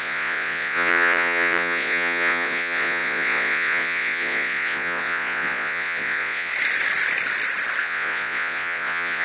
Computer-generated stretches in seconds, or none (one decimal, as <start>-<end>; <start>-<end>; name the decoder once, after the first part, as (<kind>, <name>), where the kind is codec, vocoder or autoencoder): 0.0-6.5 (vocoder, Vocos); 7.8-9.2